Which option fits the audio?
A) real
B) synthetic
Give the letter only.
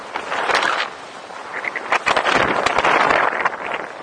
A